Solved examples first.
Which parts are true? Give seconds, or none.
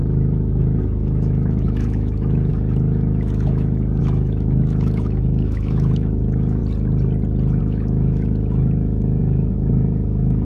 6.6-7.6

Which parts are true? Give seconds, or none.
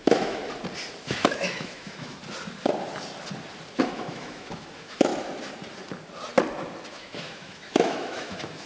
0.4-1.0; 2.2-3.8; 5.1-6.9